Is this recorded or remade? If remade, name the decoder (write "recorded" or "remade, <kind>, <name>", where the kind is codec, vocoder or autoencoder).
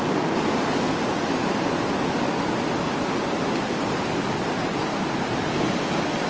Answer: recorded